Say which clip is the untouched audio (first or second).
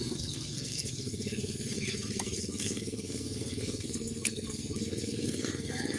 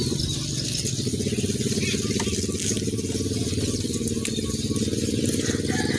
second